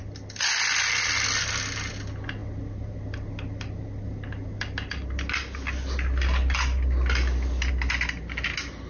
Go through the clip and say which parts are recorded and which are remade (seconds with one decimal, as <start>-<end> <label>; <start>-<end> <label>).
0.0-8.9 recorded